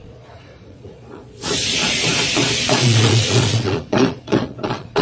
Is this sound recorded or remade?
remade